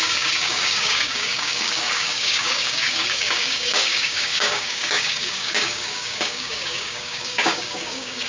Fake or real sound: fake